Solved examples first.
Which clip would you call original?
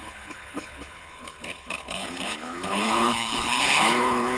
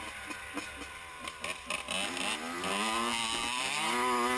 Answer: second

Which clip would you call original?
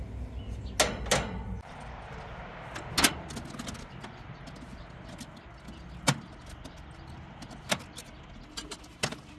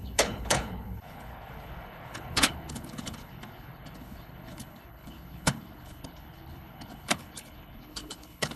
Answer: first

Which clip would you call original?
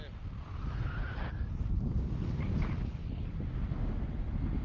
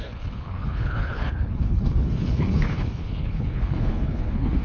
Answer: first